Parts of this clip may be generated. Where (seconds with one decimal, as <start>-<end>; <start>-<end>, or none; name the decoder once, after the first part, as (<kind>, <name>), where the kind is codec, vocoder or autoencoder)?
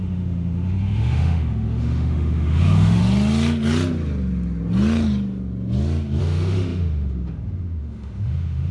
0.0-3.0 (autoencoder, DAC-VAE); 6.2-8.7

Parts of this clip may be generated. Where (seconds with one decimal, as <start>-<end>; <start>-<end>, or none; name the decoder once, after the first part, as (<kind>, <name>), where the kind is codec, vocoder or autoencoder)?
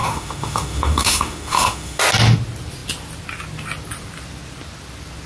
0.0-2.0 (autoencoder, DAC-VAE)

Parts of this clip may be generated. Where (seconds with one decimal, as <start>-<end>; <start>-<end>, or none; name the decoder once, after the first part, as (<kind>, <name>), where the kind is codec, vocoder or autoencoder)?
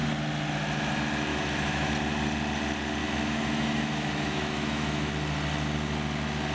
1.3-1.9 (autoencoder, DAC-VAE); 3.0-5.1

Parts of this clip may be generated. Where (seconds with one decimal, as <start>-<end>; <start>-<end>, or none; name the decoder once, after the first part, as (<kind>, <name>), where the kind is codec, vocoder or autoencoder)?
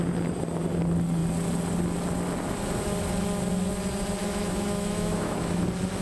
4.2-5.6 (autoencoder, DAC-VAE)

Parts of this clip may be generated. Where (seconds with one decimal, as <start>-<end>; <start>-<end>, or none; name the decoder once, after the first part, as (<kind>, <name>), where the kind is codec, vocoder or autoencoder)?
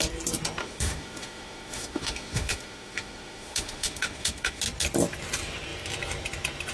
0.6-4.6 (autoencoder, DAC-VAE)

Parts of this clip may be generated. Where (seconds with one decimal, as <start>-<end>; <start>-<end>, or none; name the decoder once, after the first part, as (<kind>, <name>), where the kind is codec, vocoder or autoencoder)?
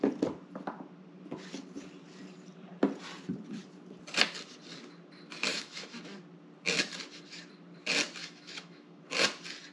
5.5-6.0 (autoencoder, DAC-VAE); 8.2-9.0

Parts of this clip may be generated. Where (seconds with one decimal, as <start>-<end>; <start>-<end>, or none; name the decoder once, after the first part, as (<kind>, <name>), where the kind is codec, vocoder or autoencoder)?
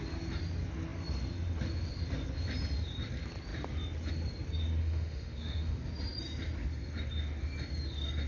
4.8-5.8 (autoencoder, DAC-VAE)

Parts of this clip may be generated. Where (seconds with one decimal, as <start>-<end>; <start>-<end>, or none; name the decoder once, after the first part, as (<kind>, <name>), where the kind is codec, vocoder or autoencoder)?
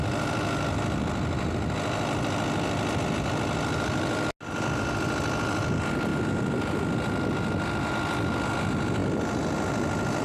none